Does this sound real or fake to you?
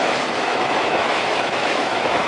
fake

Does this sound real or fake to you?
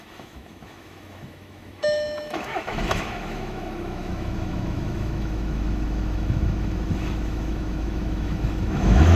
fake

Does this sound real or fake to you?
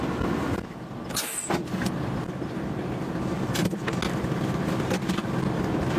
real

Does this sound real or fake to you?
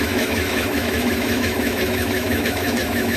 fake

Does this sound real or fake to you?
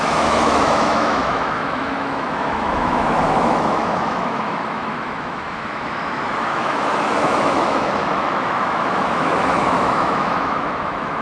fake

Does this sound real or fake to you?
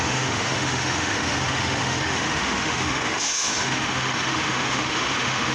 fake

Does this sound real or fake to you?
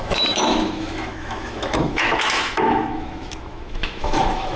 fake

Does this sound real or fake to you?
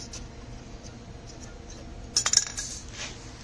real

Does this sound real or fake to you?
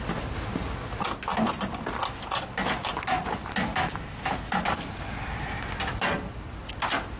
real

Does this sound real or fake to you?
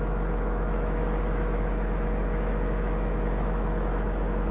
fake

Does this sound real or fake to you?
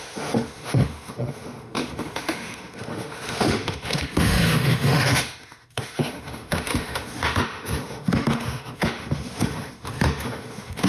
fake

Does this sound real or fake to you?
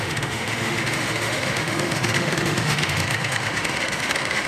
fake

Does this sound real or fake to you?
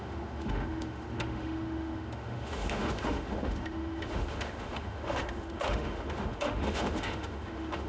fake